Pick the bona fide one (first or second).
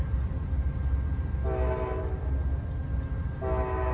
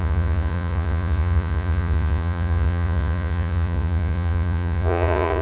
first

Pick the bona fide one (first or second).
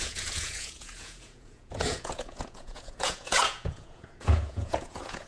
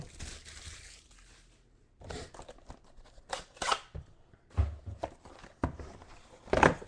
second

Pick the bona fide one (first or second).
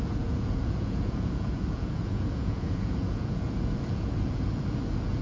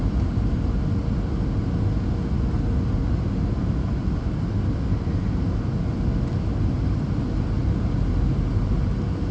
second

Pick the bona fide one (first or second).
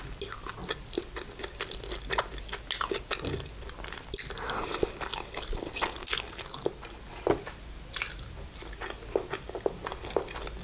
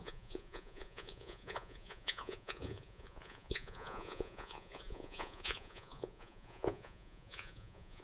first